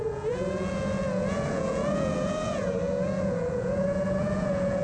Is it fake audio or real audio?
fake